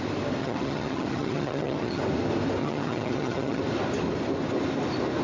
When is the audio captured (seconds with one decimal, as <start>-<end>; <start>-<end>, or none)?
0.0-0.4; 2.0-2.6; 3.6-5.2